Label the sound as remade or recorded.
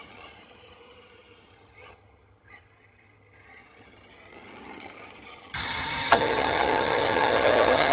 remade